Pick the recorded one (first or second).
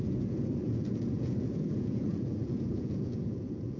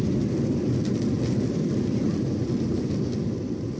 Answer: second